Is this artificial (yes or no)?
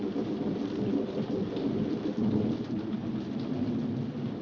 no